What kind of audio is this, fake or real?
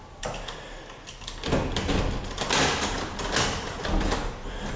real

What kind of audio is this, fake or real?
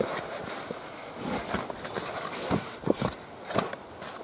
real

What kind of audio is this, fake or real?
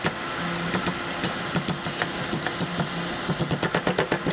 real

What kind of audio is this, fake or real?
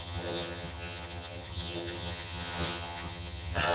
fake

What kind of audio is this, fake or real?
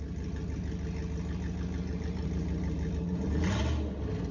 real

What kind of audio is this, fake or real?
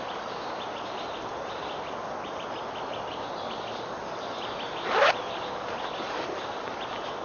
real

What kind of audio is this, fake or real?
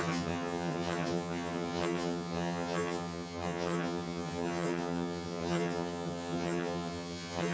fake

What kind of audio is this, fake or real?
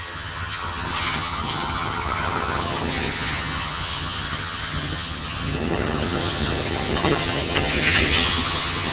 fake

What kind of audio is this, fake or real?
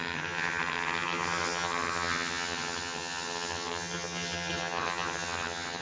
fake